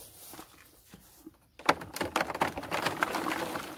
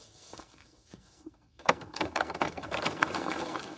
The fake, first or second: second